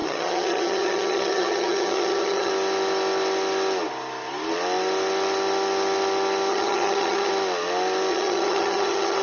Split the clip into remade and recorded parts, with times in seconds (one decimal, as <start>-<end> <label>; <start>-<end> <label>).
0.0-2.5 remade; 2.5-6.5 recorded; 6.5-7.3 remade; 7.3-8.1 recorded; 8.1-9.2 remade